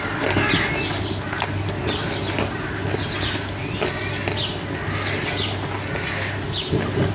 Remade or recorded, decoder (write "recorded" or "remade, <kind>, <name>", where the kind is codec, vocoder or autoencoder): recorded